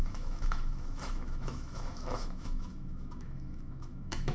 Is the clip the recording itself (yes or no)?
no